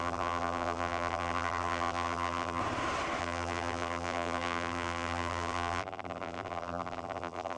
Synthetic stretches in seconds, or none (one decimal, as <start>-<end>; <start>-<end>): 0.0-2.6; 3.2-7.6